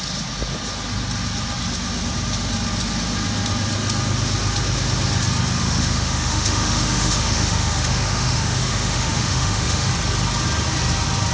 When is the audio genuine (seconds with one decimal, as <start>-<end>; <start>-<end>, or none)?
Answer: 0.0-5.6; 9.9-11.3